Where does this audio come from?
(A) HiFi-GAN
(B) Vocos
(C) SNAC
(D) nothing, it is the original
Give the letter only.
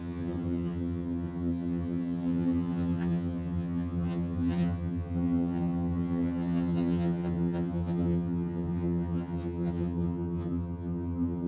A